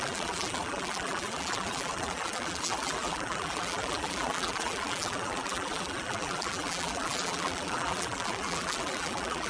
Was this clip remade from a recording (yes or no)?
yes